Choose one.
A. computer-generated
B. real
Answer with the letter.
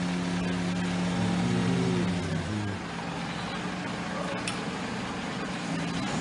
B